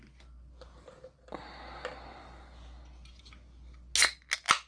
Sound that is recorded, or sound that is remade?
recorded